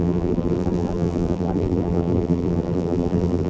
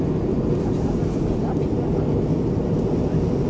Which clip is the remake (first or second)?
first